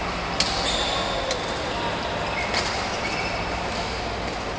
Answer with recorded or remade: recorded